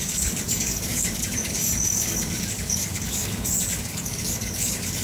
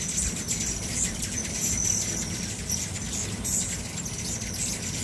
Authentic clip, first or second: second